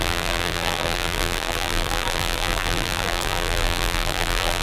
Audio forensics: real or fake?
fake